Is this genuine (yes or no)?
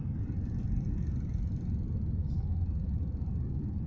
yes